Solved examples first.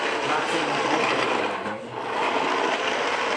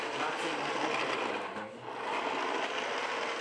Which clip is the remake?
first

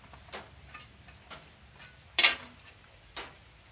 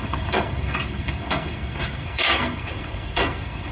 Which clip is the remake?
second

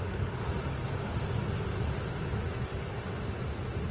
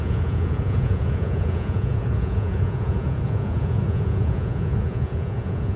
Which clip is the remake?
second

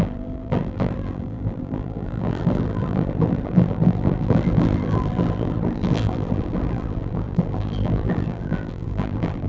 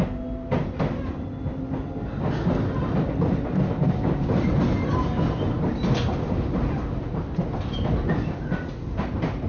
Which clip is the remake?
first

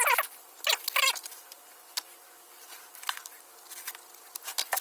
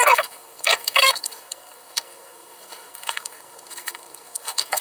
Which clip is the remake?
second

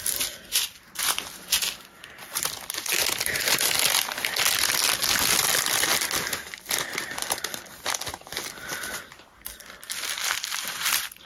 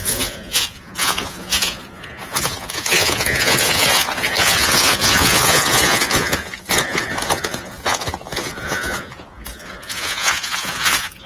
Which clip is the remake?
second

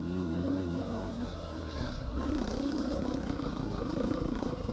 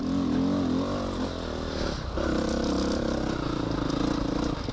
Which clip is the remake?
first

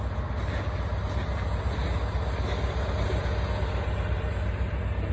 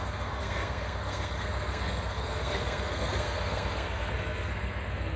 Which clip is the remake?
second